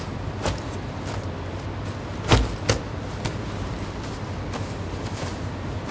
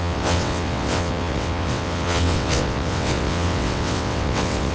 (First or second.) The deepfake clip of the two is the second